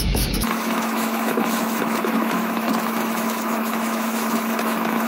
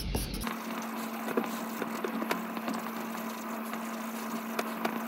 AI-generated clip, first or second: first